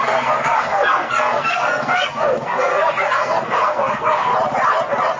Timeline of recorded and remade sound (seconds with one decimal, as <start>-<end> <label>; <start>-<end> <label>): 0.0-4.3 remade; 4.3-5.2 recorded